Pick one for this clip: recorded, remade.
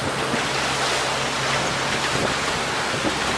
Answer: recorded